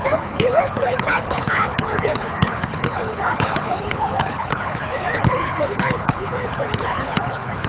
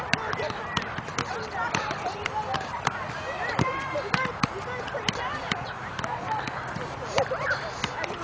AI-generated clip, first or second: first